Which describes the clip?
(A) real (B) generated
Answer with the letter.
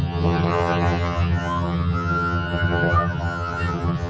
B